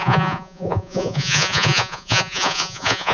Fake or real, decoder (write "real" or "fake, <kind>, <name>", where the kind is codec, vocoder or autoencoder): fake, vocoder, Vocos